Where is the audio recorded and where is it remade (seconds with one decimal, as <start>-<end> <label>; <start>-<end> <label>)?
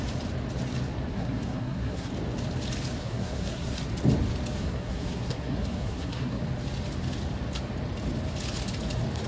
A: 0.0-1.1 recorded; 1.1-2.1 remade; 2.1-3.0 recorded; 3.0-3.8 remade; 3.8-4.6 recorded; 4.6-6.4 remade; 6.4-9.3 recorded